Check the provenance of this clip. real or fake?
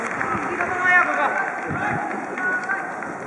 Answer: real